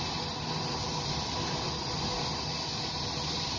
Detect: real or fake real